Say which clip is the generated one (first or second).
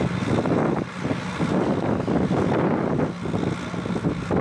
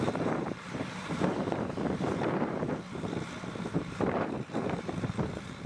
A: second